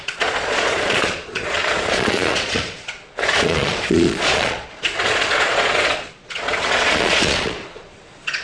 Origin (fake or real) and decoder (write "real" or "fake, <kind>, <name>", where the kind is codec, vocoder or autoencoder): fake, vocoder, Vocos